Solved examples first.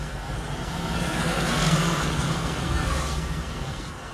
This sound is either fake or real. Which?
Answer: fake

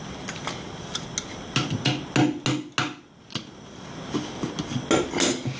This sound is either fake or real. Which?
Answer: real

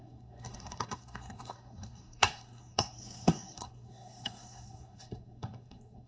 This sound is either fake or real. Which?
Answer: fake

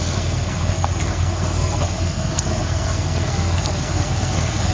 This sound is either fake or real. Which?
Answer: fake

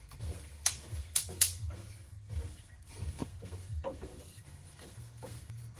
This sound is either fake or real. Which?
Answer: fake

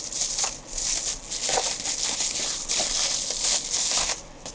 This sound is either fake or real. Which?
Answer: real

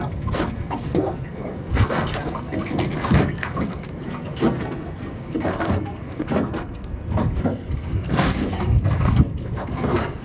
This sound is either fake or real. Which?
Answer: fake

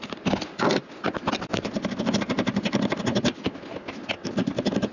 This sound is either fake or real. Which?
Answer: real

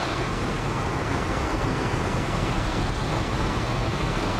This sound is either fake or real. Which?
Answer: fake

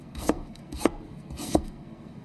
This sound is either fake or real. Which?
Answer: fake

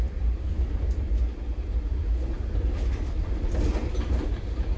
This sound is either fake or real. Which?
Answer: real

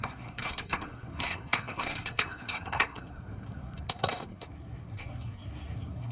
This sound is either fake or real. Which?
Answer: fake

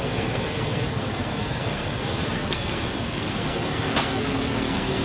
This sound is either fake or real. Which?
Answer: fake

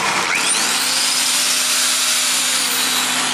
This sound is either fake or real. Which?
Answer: real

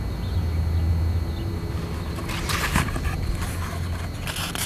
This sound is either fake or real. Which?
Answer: real